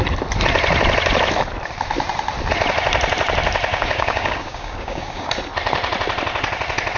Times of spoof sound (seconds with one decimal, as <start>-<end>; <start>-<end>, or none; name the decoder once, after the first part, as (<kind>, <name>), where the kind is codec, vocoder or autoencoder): 3.7-5.3 (codec, DAC)